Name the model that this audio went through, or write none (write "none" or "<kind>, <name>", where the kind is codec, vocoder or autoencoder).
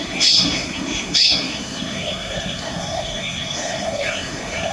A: codec, SNAC